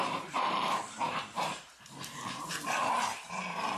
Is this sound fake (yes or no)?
yes